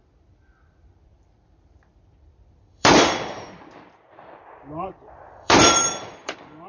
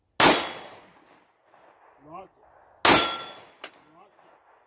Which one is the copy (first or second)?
first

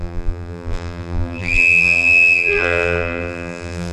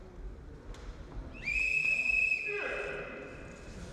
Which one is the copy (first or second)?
first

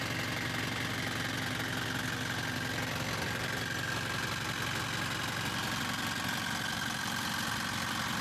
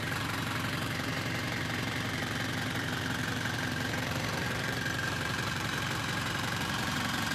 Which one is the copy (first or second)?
second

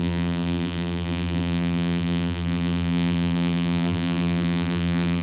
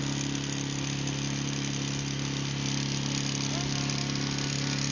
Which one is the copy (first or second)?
first